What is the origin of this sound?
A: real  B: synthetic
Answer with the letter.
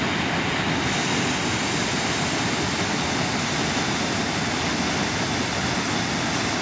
A